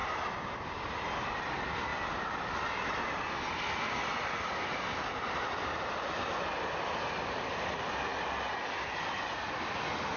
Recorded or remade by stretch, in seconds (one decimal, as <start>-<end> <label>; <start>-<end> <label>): 0.0-10.2 recorded